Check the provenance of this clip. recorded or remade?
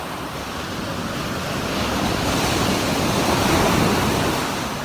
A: recorded